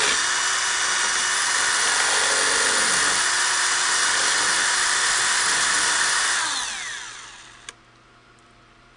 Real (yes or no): yes